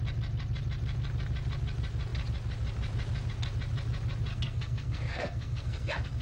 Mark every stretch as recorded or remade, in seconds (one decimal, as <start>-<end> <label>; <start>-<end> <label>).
0.0-4.3 recorded; 4.3-6.2 remade